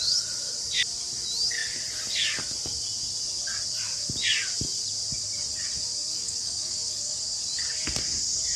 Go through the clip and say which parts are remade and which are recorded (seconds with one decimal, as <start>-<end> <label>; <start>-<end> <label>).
0.0-6.1 recorded; 6.1-7.2 remade; 7.2-8.6 recorded